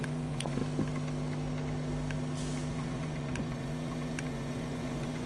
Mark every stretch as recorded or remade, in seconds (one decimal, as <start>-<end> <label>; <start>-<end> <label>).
0.0-0.6 remade; 0.6-2.7 recorded; 2.7-5.3 remade